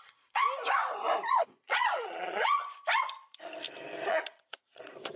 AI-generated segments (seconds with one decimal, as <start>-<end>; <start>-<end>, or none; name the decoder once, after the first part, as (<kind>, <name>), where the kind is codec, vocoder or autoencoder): 0.0-0.4 (vocoder, Vocos); 1.3-2.6; 4.1-5.2